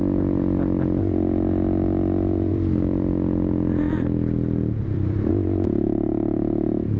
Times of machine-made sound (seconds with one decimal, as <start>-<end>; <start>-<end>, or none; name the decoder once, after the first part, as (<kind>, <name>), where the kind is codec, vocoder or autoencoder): 2.5-5.3 (vocoder, BigVGAN v2)